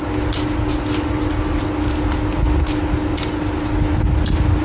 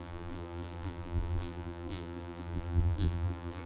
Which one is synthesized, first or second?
second